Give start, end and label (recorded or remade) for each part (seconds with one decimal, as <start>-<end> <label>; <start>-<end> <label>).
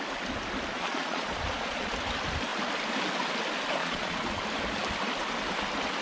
0.0-0.7 recorded; 0.7-1.9 remade; 1.9-3.8 recorded; 3.8-4.4 remade; 4.4-6.0 recorded